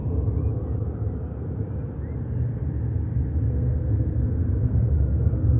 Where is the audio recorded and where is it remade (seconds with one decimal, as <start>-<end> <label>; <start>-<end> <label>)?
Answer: 0.0-3.4 recorded; 3.4-5.6 remade